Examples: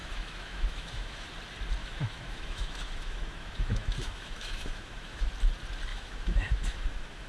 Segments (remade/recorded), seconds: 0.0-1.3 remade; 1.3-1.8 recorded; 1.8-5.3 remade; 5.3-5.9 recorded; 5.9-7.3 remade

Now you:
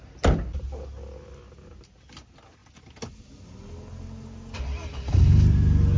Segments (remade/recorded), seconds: 0.0-6.0 recorded

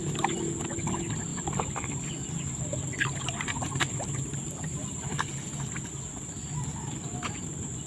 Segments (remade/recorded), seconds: 0.0-7.9 recorded

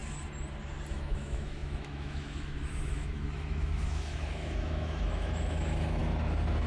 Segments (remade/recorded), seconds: 0.0-0.9 recorded; 0.9-6.0 remade; 6.0-6.7 recorded

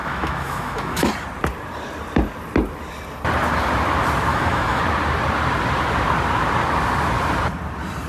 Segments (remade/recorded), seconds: 0.0-1.1 remade; 1.1-4.3 recorded; 4.3-4.8 remade; 4.8-8.1 recorded

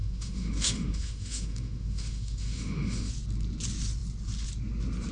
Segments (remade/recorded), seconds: 0.0-3.1 remade; 3.1-5.1 recorded